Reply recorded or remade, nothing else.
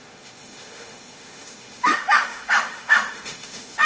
remade